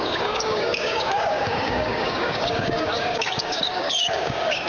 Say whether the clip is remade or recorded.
remade